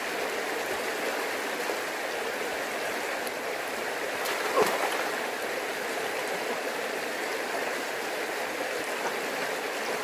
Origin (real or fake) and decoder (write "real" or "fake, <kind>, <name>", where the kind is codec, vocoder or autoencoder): real